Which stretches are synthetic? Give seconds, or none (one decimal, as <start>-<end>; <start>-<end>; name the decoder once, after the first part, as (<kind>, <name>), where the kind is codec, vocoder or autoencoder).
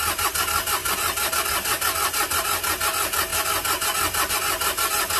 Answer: 0.8-1.3 (vocoder, BigVGAN v2)